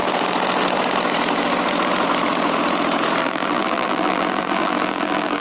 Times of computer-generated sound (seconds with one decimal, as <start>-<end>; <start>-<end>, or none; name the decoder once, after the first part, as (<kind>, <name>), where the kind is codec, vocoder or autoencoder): 3.2-5.4 (vocoder, BigVGAN v2)